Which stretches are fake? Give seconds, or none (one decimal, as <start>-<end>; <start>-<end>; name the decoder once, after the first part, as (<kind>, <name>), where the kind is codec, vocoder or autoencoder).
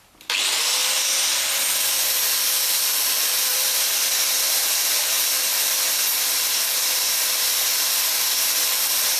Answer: 3.5-5.0 (vocoder, BigVGAN v2)